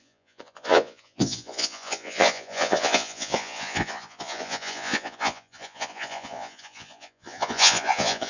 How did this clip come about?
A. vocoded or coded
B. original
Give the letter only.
A